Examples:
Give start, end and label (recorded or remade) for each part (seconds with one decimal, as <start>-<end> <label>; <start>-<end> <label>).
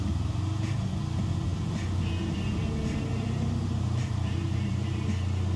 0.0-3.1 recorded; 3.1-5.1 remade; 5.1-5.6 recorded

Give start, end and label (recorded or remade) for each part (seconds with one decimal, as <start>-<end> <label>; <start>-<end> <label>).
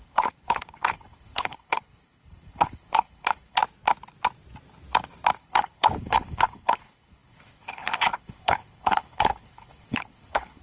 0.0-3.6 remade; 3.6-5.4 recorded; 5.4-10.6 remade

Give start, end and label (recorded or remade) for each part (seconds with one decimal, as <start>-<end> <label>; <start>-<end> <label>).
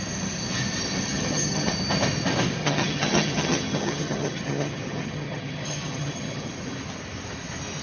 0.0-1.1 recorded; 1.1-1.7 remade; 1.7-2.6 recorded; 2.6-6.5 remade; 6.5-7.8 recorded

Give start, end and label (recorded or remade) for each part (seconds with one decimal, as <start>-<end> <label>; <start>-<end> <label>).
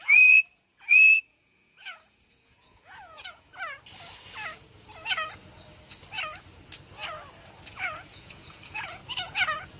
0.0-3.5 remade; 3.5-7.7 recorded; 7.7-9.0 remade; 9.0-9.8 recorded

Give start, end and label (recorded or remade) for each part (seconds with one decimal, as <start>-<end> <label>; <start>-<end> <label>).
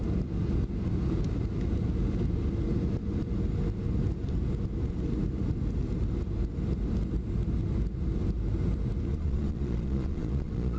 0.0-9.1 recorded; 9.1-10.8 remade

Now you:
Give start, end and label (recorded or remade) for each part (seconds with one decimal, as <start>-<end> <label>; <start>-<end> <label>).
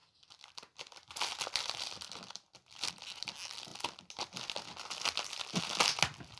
0.0-6.4 recorded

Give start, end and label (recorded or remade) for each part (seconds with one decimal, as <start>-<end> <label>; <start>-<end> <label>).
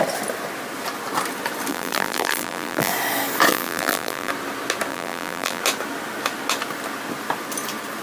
0.0-1.7 recorded; 1.7-2.9 remade; 2.9-3.5 recorded; 3.5-4.3 remade; 4.3-4.9 recorded; 4.9-5.6 remade; 5.6-8.0 recorded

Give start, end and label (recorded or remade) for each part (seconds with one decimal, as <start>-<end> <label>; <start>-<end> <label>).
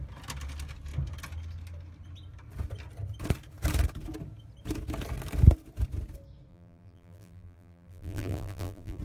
0.0-6.5 recorded; 6.5-9.0 remade